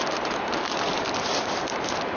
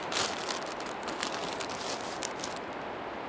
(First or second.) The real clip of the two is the second